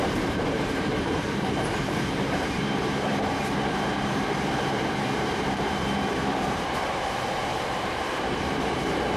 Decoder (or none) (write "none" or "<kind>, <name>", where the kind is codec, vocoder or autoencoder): vocoder, BigVGAN v2